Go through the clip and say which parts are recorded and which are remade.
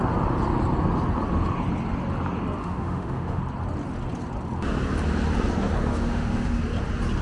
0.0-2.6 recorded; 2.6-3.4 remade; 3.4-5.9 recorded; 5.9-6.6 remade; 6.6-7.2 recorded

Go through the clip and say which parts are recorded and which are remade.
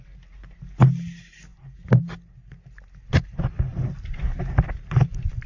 0.0-5.5 recorded